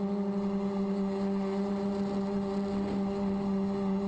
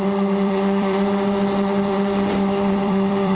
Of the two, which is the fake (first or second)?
second